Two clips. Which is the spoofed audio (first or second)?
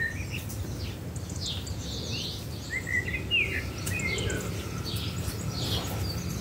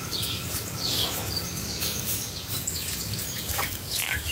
second